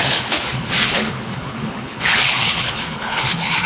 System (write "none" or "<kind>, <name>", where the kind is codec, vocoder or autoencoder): codec, HILCodec